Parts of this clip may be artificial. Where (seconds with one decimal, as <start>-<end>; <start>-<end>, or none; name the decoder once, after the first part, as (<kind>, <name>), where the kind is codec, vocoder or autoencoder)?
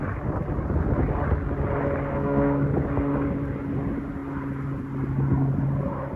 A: 2.1-2.6 (codec, SNAC)